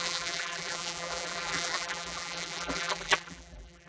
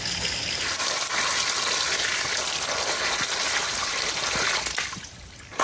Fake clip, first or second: first